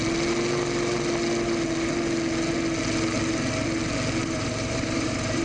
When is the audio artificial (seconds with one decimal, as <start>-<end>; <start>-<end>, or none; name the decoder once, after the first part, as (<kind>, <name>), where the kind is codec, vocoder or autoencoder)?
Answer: 4.2-5.4 (vocoder, BigVGAN v2)